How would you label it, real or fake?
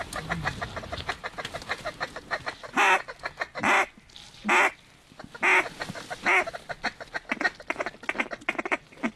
real